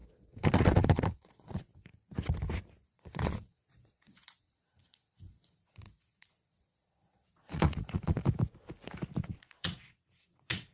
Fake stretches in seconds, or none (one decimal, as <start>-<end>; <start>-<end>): 0.0-1.7; 2.9-8.2; 9.2-10.7